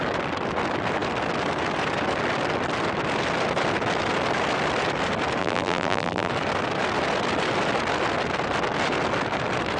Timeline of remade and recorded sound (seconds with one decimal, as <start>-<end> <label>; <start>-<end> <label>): 0.0-5.4 recorded; 5.4-6.3 remade; 6.3-9.8 recorded